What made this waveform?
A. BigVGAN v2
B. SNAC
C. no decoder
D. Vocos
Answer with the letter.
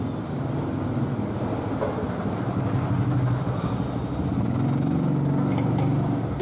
C